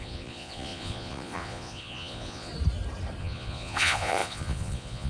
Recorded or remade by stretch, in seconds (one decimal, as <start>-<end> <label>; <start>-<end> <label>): 0.0-2.5 remade; 2.5-3.2 recorded; 3.2-5.1 remade